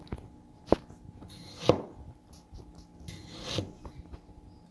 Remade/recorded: recorded